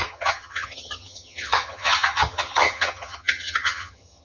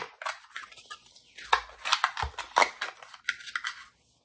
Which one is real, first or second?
second